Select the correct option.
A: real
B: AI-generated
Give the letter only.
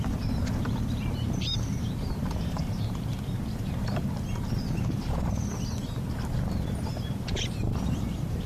B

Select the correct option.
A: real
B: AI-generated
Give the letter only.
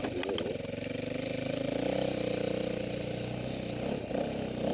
A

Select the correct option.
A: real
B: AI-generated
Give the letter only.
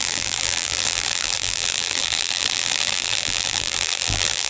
B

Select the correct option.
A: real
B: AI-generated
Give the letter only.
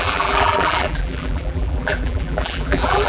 B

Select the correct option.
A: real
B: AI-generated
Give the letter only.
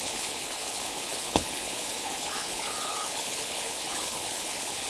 B